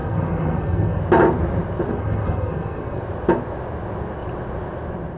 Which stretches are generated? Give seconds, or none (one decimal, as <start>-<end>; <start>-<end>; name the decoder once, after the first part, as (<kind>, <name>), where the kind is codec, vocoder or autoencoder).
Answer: 0.0-1.0 (codec, SNAC); 1.9-3.0